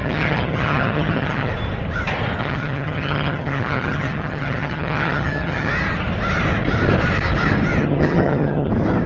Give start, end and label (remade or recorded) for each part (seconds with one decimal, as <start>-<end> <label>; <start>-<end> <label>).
0.0-1.5 remade; 1.5-2.4 recorded; 2.4-5.7 remade; 5.7-7.8 recorded; 7.8-8.7 remade; 8.7-9.1 recorded